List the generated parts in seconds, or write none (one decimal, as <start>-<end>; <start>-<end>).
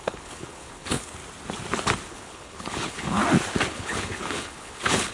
0.0-1.2; 2.1-3.2; 3.7-5.1